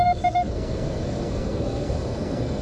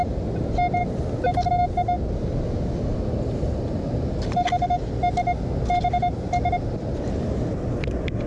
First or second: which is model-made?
first